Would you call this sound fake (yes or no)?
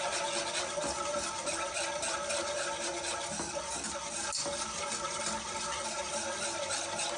no